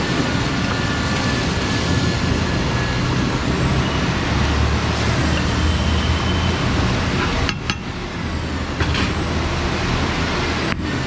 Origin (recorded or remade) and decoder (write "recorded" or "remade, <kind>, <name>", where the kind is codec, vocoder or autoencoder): recorded